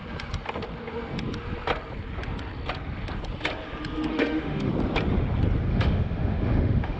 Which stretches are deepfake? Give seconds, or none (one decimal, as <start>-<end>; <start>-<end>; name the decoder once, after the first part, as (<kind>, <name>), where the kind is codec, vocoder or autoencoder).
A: 4.1-4.7 (autoencoder, DAC-VAE); 5.7-7.0